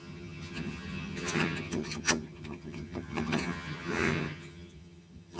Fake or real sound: fake